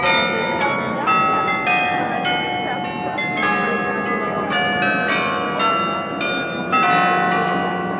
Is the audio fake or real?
real